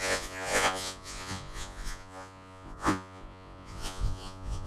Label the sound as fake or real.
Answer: fake